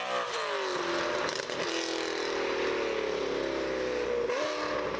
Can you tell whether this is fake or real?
real